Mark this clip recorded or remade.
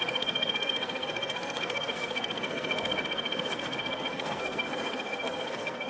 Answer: remade